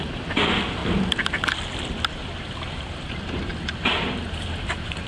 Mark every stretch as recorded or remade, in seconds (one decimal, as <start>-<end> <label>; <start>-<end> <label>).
0.0-0.8 remade; 0.8-2.1 recorded; 2.1-3.5 remade; 3.5-4.1 recorded; 4.1-5.1 remade